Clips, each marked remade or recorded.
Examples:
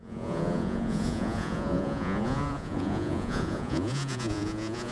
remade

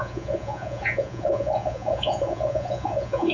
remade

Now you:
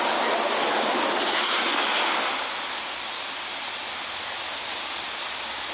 recorded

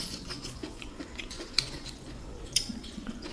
remade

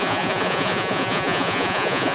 remade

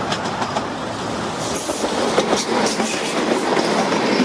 recorded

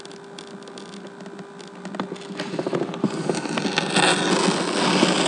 recorded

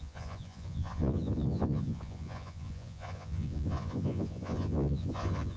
remade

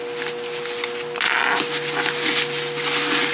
recorded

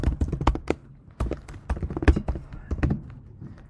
recorded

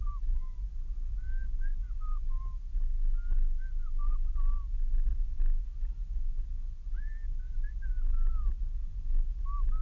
recorded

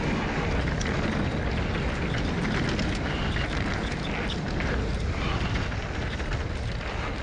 recorded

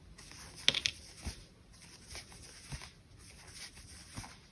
recorded